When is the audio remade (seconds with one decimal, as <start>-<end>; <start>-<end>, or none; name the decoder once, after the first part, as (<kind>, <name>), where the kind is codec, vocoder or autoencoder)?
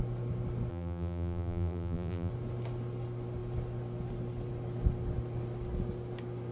0.7-2.3 (vocoder, BigVGAN v2)